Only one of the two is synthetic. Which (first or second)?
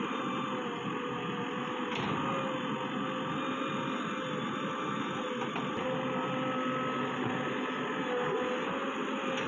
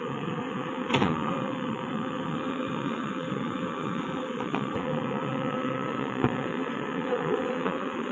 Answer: second